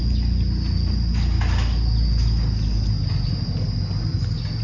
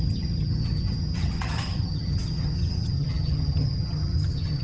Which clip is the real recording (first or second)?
first